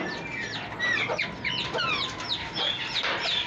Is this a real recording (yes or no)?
yes